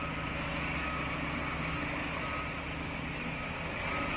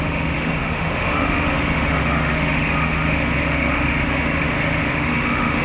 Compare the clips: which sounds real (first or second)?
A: first